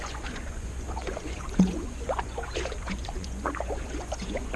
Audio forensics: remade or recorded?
remade